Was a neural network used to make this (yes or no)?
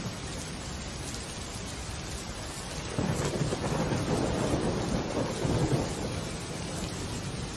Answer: no